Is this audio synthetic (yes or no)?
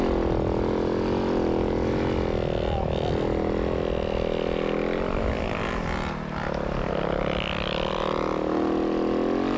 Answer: no